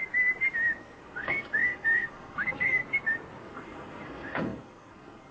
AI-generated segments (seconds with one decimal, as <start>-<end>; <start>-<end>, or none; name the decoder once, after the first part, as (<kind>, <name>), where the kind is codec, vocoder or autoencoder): 0.8-2.8 (codec, SNAC); 3.4-5.3